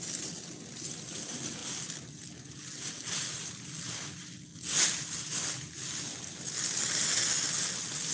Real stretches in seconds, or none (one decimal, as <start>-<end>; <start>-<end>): 0.0-8.1